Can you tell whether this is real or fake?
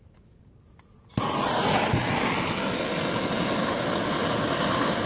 real